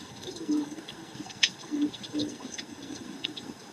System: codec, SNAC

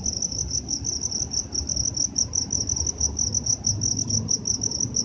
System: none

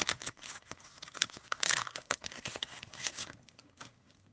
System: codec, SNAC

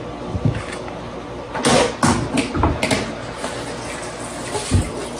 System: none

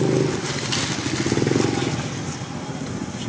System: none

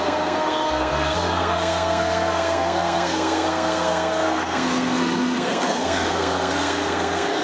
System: codec, SNAC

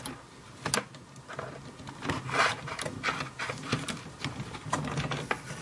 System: none